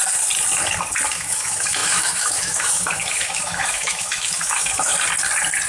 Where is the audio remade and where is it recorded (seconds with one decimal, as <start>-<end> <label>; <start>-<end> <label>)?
0.0-1.1 recorded; 1.1-4.9 remade; 4.9-5.7 recorded